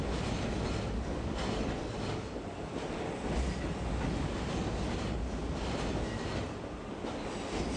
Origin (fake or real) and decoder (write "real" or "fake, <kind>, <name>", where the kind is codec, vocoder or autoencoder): real